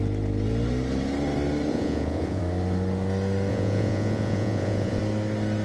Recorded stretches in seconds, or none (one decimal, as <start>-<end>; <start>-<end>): 0.0-1.7; 2.4-3.5; 5.0-5.6